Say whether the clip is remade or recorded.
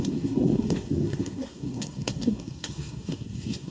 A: remade